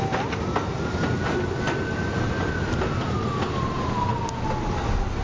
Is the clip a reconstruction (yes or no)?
no